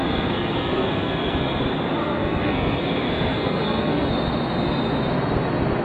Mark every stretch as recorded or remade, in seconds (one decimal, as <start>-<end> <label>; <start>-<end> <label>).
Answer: 0.0-1.6 remade; 1.6-2.0 recorded; 2.0-4.1 remade; 4.1-5.8 recorded